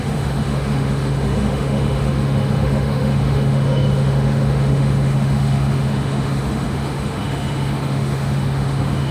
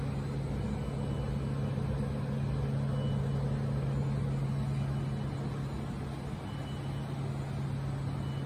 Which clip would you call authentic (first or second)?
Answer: second